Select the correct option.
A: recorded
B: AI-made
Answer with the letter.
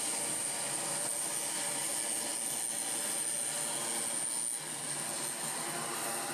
A